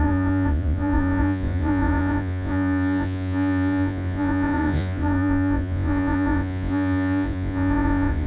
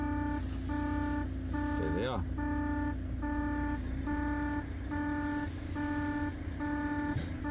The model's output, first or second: first